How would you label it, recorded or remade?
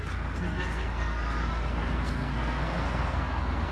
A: remade